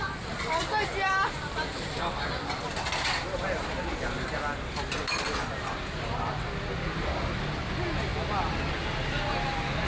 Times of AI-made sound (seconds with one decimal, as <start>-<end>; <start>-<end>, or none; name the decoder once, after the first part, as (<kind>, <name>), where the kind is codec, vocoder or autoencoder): none